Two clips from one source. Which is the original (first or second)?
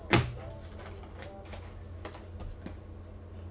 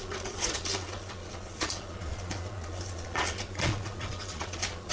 first